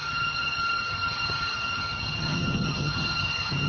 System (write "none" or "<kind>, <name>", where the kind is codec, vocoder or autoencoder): vocoder, HiFi-GAN